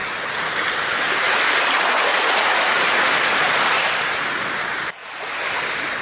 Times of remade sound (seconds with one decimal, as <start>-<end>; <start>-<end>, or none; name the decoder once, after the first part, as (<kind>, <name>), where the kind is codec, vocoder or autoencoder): 0.0-0.5 (vocoder, Vocos); 2.1-3.4